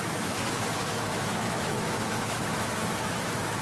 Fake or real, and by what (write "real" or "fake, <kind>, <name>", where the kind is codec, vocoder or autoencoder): fake, autoencoder, DAC-VAE